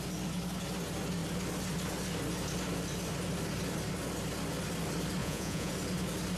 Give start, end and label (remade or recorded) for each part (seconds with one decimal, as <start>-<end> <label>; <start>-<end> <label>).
0.0-5.2 recorded; 5.2-5.7 remade; 5.7-6.4 recorded